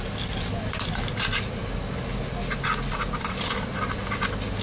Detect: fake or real real